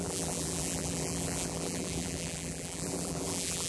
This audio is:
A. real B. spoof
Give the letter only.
B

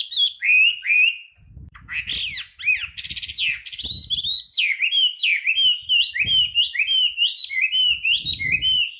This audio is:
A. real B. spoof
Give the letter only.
A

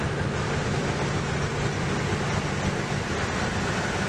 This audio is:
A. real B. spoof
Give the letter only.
A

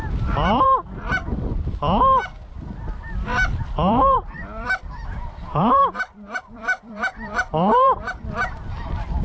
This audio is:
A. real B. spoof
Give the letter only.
B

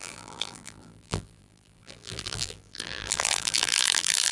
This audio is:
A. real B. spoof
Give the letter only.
B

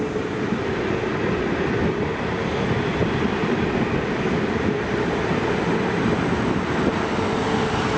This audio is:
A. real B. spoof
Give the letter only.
A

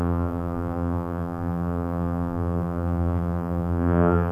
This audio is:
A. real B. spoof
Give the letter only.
B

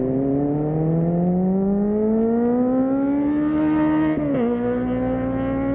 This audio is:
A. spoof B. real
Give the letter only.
B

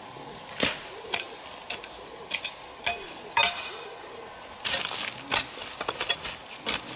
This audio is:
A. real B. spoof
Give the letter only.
A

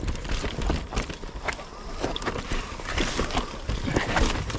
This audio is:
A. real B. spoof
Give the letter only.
A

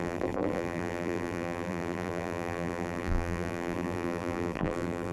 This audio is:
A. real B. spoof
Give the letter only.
B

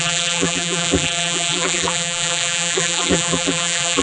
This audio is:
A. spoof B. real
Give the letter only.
A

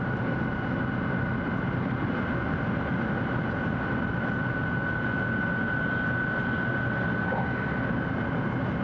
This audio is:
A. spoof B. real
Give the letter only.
B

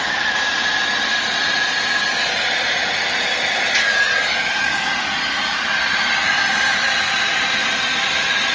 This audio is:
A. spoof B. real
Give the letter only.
B